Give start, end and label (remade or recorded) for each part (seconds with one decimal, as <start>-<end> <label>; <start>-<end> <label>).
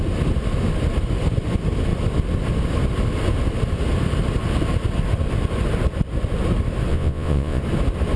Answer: 0.0-6.9 recorded; 6.9-7.6 remade; 7.6-8.2 recorded